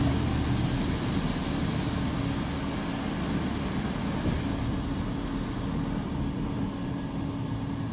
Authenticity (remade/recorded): recorded